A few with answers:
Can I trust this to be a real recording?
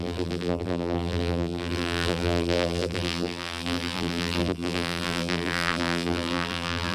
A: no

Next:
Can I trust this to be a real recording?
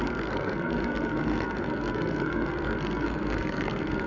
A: no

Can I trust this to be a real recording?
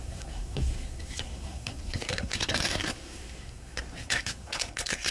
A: no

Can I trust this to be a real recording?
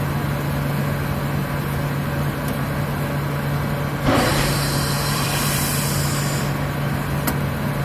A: no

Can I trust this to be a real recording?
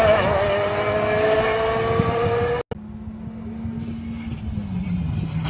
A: yes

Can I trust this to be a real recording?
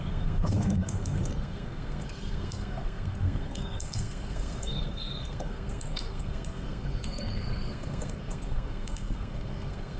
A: no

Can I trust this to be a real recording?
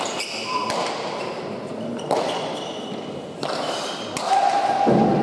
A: yes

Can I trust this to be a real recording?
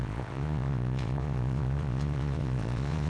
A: no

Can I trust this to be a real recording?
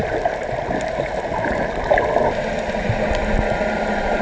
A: yes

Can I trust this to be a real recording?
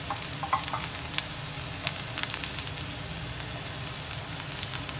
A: yes